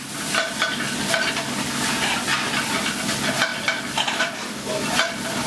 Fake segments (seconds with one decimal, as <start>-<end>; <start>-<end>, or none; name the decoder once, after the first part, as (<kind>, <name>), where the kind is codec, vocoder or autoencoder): none